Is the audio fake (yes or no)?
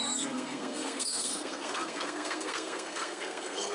yes